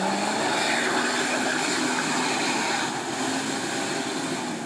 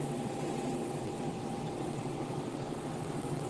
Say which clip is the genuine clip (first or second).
first